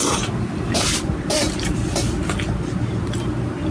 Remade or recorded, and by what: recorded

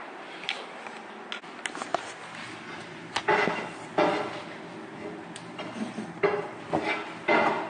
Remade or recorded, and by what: recorded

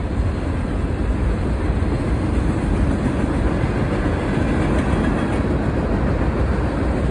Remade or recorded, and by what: recorded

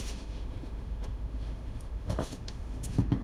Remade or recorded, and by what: remade, autoencoder, DAC-VAE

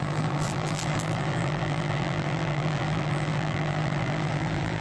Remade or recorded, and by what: remade, vocoder, BigVGAN v2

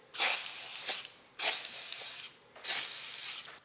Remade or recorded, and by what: recorded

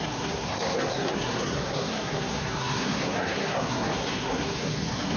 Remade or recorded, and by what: remade, codec, SNAC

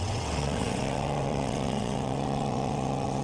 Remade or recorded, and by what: remade, vocoder, WaveNeXt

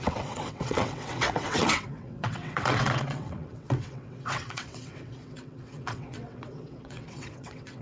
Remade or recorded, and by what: remade, vocoder, WaveNeXt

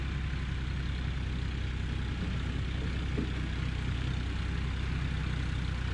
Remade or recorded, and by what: recorded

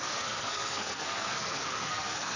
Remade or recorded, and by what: remade, codec, SNAC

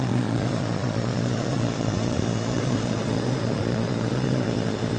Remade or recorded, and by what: remade, vocoder, Vocos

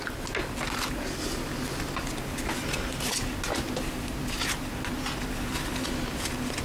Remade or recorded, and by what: recorded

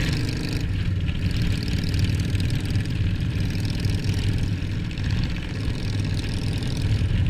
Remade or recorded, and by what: recorded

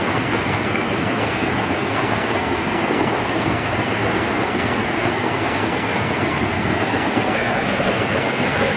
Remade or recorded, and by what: remade, codec, SNAC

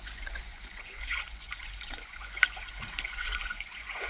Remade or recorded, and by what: remade, vocoder, Vocos